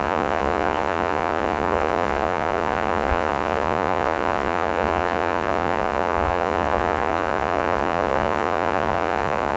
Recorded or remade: remade